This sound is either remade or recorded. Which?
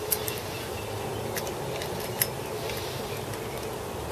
recorded